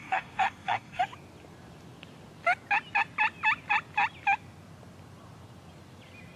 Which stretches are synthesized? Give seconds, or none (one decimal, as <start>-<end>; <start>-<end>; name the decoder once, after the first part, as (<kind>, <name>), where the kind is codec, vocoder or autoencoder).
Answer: 0.0-1.0 (codec, DAC)

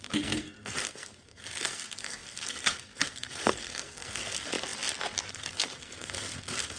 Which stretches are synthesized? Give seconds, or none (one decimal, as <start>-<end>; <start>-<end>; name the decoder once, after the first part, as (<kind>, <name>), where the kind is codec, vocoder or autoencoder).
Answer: 0.0-4.5 (codec, SNAC); 5.3-6.8

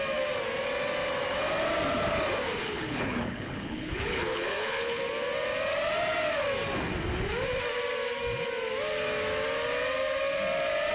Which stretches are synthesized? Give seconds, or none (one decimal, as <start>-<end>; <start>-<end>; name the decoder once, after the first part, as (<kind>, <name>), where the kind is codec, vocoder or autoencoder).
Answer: 2.6-5.0 (codec, HILCodec)

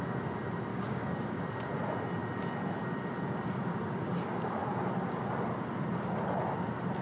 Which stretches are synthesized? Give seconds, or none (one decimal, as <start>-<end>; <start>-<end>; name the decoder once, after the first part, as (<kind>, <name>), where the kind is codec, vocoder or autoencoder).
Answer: 0.7-1.4 (codec, DAC)

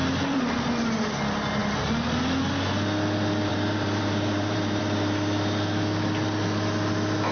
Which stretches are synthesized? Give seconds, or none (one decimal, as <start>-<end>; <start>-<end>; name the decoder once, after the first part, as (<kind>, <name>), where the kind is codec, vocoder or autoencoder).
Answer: 3.5-4.8 (vocoder, BigVGAN v2)

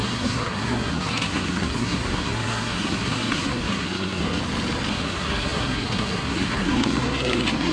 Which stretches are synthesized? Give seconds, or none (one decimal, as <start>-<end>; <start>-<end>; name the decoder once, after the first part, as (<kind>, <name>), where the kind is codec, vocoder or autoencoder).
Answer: 0.0-4.4 (codec, SNAC); 4.9-7.7

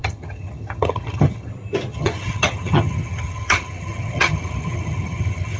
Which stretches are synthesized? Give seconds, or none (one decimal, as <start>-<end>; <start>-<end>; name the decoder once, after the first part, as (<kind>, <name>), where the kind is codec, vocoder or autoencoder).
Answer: 0.0-1.5 (vocoder, HiFi-GAN); 1.9-5.6